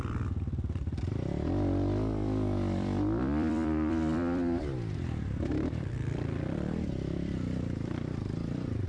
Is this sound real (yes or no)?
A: no